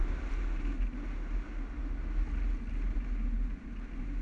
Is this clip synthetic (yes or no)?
no